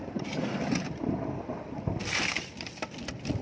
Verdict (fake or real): real